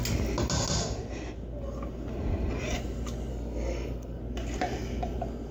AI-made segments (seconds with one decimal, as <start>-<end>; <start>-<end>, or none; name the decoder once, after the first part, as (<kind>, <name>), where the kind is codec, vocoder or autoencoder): 3.3-4.2 (codec, SNAC)